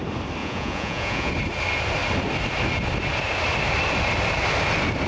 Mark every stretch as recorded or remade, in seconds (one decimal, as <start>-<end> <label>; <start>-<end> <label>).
0.0-0.4 recorded; 0.4-1.3 remade; 1.3-5.1 recorded